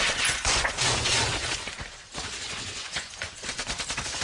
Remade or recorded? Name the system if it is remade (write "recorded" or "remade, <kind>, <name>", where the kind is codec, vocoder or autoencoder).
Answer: remade, vocoder, Vocos